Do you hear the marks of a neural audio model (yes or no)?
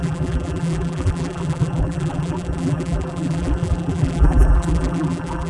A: yes